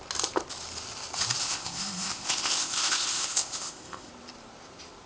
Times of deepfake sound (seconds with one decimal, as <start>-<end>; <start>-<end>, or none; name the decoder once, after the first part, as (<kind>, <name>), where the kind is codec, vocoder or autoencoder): 1.4-4.1 (codec, ZipCodec)